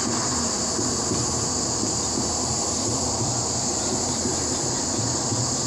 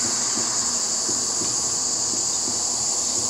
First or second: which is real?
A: second